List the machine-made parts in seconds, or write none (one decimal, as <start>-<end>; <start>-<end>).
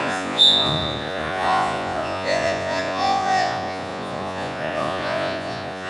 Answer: 0.0-5.9